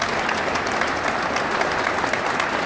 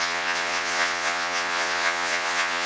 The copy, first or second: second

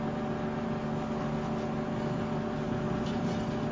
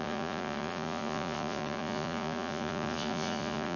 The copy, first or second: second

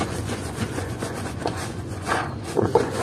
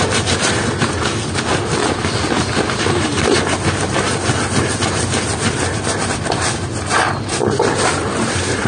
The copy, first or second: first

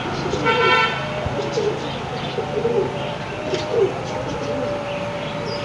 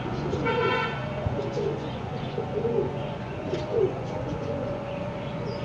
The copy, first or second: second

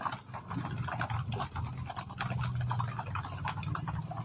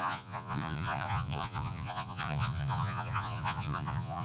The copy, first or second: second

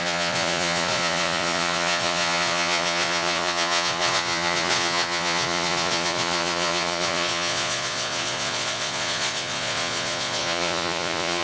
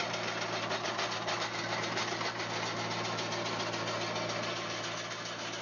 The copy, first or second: first